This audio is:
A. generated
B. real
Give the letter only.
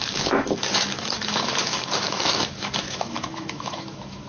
A